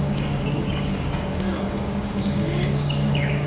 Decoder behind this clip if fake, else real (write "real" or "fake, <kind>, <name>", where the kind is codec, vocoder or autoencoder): fake, codec, DAC